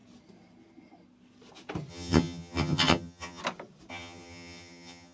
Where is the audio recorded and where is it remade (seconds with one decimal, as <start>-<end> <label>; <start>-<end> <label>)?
0.0-1.9 recorded; 1.9-3.4 remade; 3.4-3.9 recorded; 3.9-5.1 remade